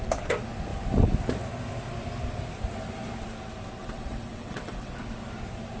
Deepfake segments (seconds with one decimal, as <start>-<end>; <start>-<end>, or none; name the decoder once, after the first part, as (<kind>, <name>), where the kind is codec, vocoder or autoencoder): 3.8-4.9 (vocoder, WaveNeXt)